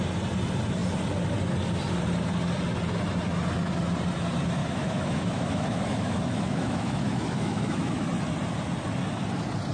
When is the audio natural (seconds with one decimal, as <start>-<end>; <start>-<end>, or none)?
0.0-4.6; 8.0-9.7